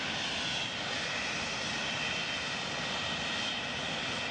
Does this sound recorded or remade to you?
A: recorded